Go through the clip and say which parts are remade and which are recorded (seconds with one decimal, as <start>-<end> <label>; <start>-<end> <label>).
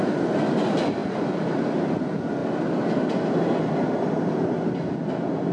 0.0-5.5 recorded